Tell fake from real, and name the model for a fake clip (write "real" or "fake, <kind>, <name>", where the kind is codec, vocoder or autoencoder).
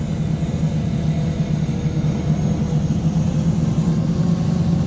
real